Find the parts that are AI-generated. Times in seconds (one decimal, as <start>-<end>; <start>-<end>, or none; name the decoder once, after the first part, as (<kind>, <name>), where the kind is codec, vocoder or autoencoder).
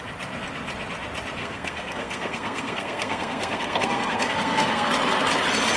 1.4-4.9 (codec, SNAC)